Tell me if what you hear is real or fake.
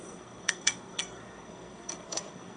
fake